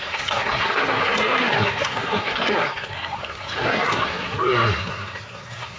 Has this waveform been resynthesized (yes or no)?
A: yes